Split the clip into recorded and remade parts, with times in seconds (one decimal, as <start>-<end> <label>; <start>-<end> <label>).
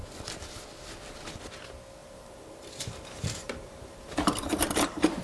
0.0-2.0 recorded; 2.0-5.2 remade